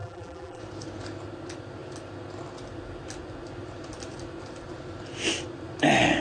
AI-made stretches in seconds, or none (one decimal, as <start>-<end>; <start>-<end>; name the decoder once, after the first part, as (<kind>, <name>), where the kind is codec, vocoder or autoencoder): 0.0-0.6 (vocoder, BigVGAN v2)